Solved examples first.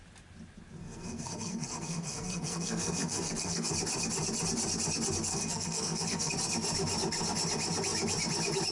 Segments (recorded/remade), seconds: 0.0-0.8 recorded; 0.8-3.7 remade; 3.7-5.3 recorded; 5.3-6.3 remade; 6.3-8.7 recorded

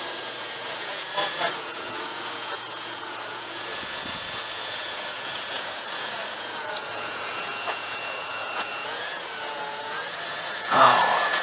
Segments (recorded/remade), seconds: 0.0-11.4 remade

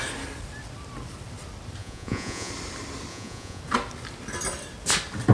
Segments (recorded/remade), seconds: 0.0-1.8 recorded; 1.8-2.5 remade; 2.5-3.1 recorded; 3.1-3.6 remade; 3.6-5.3 recorded

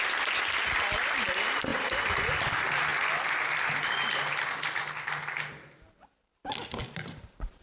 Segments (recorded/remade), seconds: 0.0-6.8 recorded; 6.8-7.6 remade

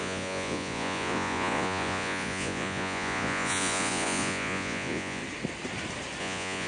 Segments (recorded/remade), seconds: 0.0-5.2 remade; 5.2-6.2 recorded; 6.2-6.7 remade